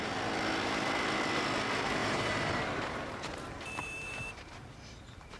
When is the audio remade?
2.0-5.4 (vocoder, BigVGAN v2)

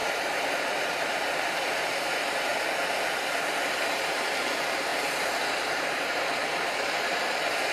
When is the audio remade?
0.0-2.5 (vocoder, BigVGAN v2); 3.1-7.7

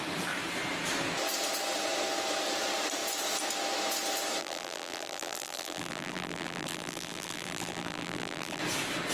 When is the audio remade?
4.4-8.6 (vocoder, BigVGAN v2)